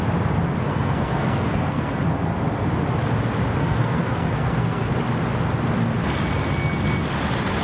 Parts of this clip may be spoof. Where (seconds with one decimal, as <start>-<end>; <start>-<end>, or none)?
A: 0.7-2.0; 3.6-4.9